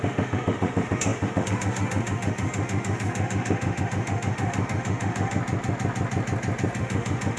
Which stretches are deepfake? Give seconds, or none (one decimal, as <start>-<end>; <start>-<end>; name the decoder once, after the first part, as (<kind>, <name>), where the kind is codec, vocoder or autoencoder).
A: 0.0-5.4 (autoencoder, DAC-VAE); 6.8-7.4